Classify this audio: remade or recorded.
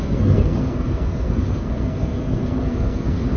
remade